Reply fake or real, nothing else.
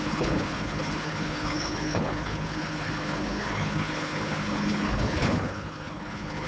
fake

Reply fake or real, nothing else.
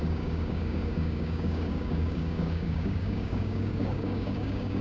fake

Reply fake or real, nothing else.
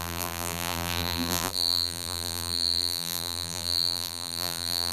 fake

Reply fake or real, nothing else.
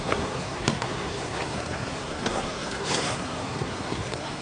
fake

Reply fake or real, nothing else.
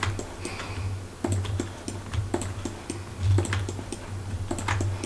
real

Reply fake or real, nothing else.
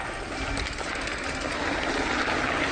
real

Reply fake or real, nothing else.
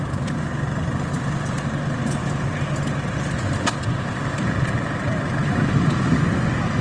real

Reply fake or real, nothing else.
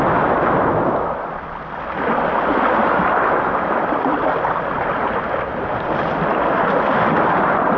real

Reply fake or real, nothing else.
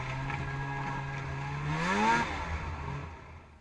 real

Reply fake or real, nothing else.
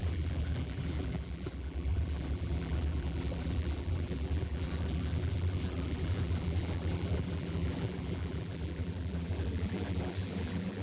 fake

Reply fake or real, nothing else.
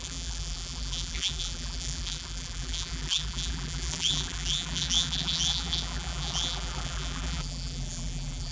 fake